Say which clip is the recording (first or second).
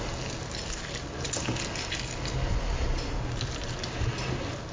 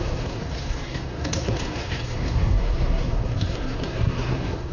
first